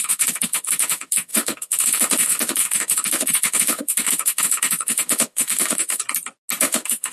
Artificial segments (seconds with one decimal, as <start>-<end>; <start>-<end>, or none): 0.0-6.0; 6.6-7.1